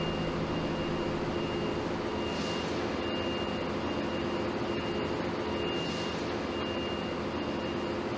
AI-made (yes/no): no